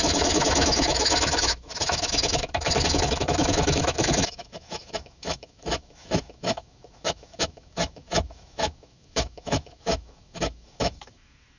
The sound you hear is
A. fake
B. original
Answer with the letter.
A